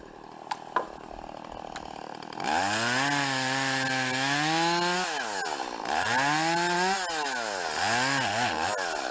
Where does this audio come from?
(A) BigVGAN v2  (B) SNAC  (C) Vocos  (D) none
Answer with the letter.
D